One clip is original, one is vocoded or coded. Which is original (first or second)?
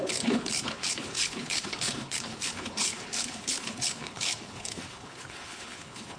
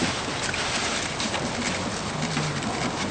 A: second